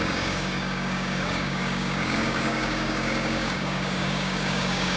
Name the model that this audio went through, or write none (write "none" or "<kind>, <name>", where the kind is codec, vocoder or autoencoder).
codec, DAC